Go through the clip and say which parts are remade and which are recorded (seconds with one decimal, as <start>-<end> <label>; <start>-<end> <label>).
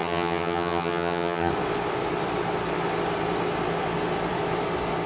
0.0-1.5 remade; 1.5-5.1 recorded